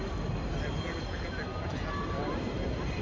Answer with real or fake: real